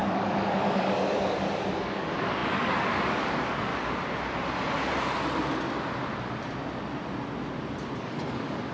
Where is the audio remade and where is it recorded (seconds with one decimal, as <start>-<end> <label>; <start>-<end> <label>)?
0.0-3.7 remade; 3.7-8.0 recorded; 8.0-8.7 remade